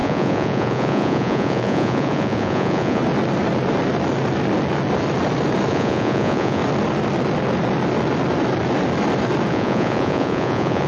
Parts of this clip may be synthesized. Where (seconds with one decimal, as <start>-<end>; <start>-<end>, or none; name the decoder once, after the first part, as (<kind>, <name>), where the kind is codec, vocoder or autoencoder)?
0.0-3.0 (vocoder, Vocos); 5.7-6.6; 9.5-10.9